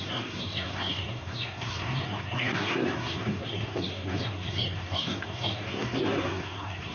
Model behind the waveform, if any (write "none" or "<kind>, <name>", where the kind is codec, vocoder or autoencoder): codec, SNAC